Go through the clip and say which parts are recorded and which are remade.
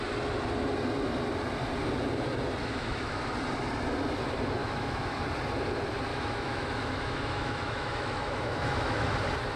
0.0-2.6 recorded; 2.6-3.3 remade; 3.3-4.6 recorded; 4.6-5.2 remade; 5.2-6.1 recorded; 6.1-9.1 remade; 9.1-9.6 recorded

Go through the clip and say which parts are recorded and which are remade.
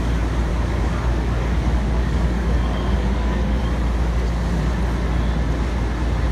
0.0-0.5 recorded; 0.5-3.6 remade; 3.6-6.3 recorded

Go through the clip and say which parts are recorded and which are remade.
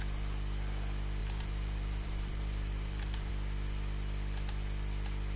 0.0-1.2 recorded; 1.2-3.3 remade; 3.3-5.4 recorded